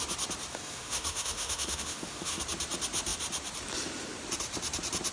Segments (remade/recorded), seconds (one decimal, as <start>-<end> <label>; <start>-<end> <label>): 0.0-0.5 recorded; 0.5-2.4 remade; 2.4-5.1 recorded